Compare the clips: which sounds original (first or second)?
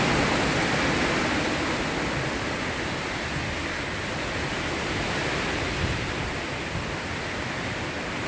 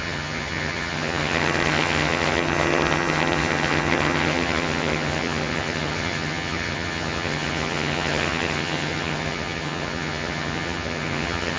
first